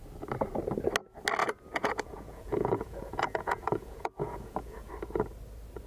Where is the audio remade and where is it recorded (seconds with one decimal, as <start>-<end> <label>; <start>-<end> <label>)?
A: 0.0-1.4 recorded; 1.4-4.9 remade; 4.9-5.9 recorded

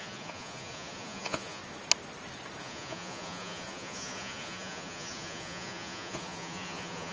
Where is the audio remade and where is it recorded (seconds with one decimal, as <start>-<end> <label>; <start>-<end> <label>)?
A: 0.0-1.6 remade; 1.6-2.6 recorded; 2.6-7.1 remade

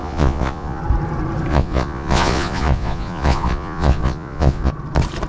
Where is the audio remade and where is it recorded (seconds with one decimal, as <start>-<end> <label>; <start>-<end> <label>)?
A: 0.0-0.8 remade; 0.8-1.5 recorded; 1.5-4.7 remade; 4.7-5.3 recorded

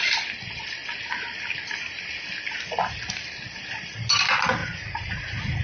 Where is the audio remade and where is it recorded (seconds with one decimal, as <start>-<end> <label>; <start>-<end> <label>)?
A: 0.0-4.6 recorded; 4.6-5.6 remade

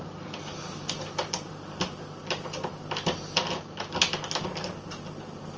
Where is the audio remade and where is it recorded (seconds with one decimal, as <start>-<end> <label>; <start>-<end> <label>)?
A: 0.0-5.6 recorded

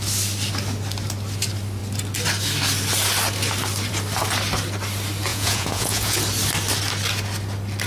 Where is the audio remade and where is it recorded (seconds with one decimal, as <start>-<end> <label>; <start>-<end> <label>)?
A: 0.0-5.3 recorded; 5.3-6.2 remade; 6.2-7.9 recorded

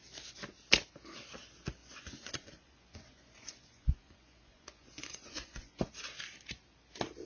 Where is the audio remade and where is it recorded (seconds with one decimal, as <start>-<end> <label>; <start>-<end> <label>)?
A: 0.0-1.8 recorded; 1.8-5.8 remade; 5.8-7.3 recorded